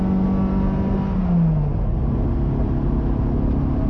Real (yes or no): yes